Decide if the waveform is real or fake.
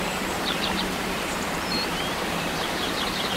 fake